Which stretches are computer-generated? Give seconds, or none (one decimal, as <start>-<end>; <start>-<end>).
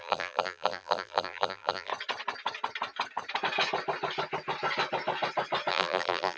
0.0-1.9; 5.7-6.4